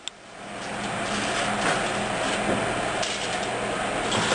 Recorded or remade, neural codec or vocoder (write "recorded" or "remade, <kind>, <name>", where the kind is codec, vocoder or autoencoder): recorded